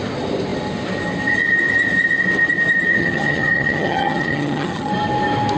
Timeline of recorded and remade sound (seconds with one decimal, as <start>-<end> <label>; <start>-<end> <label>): 0.0-3.0 recorded; 3.0-4.9 remade; 4.9-5.6 recorded